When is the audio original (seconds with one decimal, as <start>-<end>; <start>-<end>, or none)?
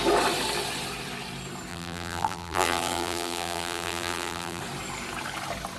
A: 0.0-1.7; 4.6-5.8